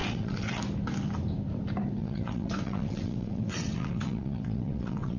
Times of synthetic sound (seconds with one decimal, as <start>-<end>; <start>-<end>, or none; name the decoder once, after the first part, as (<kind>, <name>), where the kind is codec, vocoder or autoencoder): 0.0-0.6 (vocoder, WaveNeXt); 2.0-5.2